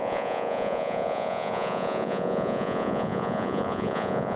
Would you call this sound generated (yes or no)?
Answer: yes